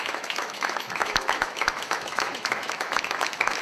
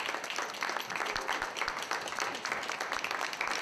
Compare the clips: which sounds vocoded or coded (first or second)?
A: first